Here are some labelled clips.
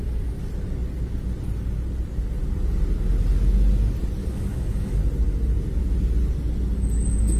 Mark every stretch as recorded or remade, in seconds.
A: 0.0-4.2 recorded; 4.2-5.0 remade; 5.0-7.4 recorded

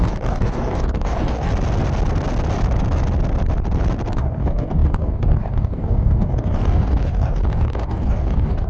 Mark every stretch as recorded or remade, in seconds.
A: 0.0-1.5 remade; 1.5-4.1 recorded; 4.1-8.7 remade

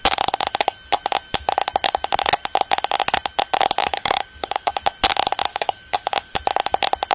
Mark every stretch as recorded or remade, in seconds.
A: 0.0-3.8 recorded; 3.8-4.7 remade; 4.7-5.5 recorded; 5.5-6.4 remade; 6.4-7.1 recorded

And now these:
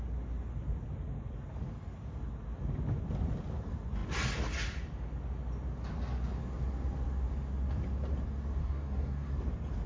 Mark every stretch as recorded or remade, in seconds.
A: 0.0-8.6 recorded; 8.6-9.3 remade; 9.3-9.9 recorded

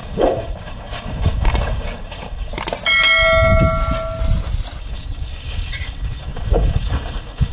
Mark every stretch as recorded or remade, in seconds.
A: 0.0-2.5 remade; 2.5-4.8 recorded; 4.8-7.5 remade

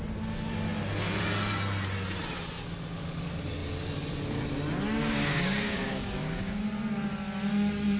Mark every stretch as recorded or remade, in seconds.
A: 0.0-5.1 recorded; 5.1-6.6 remade; 6.6-8.0 recorded